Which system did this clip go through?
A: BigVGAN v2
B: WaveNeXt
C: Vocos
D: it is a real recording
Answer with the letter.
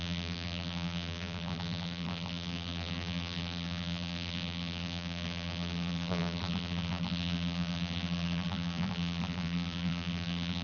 A